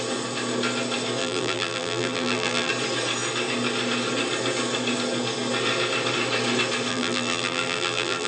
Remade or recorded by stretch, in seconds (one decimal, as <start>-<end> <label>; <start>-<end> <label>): 0.0-1.2 recorded; 1.2-2.7 remade; 2.7-6.9 recorded; 6.9-8.3 remade